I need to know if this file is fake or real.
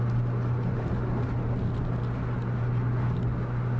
real